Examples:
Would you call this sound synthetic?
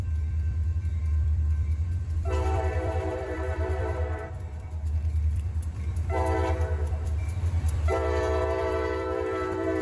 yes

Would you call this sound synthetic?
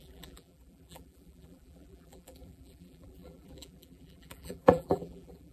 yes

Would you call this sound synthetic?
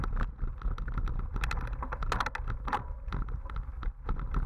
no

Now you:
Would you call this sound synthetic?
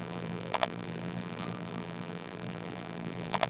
yes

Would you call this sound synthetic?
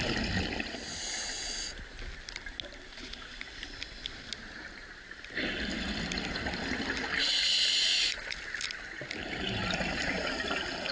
no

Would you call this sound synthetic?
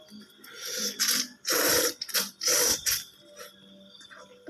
yes